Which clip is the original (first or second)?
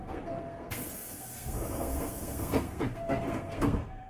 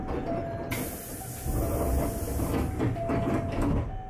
second